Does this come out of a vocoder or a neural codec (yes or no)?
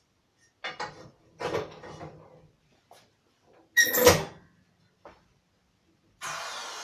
no